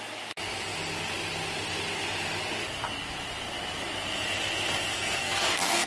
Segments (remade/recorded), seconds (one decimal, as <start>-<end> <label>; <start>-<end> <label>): 0.0-4.9 recorded; 4.9-5.9 remade